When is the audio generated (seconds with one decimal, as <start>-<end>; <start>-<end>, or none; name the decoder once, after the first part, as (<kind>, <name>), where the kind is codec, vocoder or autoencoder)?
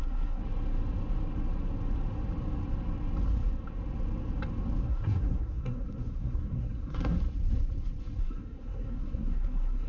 0.0-0.4 (codec, SNAC); 4.8-7.2; 8.2-9.9